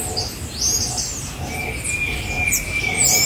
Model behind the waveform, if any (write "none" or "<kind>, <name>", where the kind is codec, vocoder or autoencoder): none